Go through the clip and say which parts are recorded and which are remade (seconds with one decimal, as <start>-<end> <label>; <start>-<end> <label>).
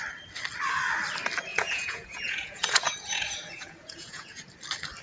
0.0-1.5 recorded; 1.5-4.5 remade; 4.5-5.0 recorded